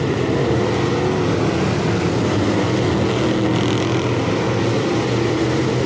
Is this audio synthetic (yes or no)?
no